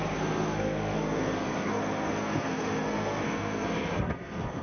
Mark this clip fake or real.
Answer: fake